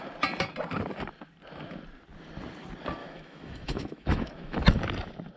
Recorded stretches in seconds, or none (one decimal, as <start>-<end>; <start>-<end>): 0.0-3.0; 4.8-5.4